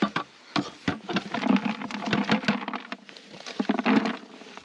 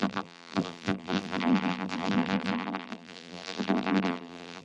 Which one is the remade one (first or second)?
second